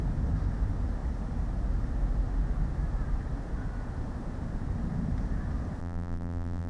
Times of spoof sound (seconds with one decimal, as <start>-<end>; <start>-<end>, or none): 5.8-6.7